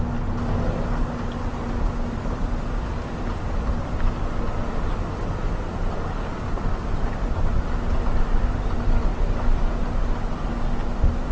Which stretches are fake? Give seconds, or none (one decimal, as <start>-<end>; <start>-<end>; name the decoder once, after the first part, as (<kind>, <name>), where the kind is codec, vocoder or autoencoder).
none